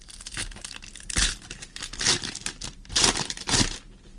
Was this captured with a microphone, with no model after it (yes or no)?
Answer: no